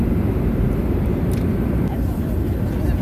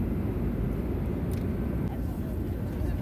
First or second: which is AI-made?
first